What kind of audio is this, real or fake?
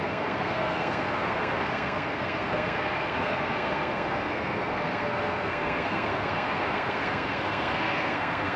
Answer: fake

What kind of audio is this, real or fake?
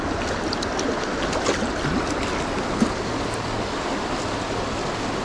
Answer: real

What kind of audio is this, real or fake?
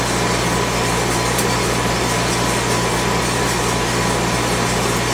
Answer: real